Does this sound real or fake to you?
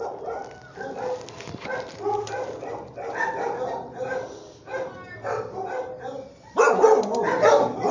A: real